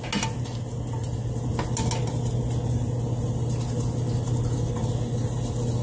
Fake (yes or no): no